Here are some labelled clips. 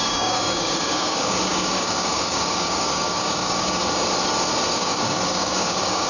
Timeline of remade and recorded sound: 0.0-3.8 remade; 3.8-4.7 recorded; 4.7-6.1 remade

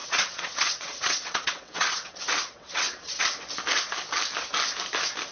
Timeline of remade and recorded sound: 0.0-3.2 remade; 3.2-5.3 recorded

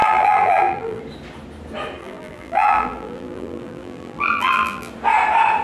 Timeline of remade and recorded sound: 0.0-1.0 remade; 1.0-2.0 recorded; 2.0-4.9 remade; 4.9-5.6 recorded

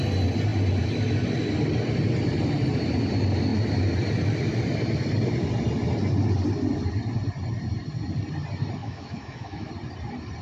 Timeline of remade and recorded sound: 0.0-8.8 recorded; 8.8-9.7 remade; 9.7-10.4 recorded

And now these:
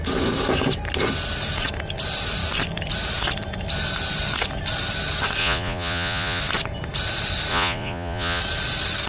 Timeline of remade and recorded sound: 0.0-5.4 recorded; 5.4-6.4 remade; 6.4-7.5 recorded; 7.5-8.4 remade; 8.4-9.1 recorded

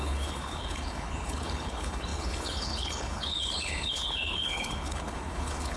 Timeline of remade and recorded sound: 0.0-5.8 remade

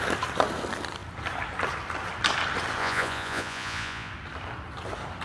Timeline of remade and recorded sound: 0.0-2.8 recorded; 2.8-4.1 remade; 4.1-5.2 recorded